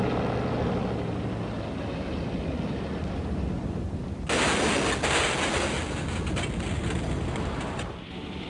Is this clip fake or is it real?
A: real